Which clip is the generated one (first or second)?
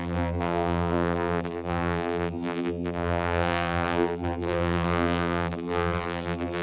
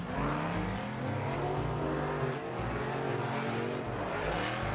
first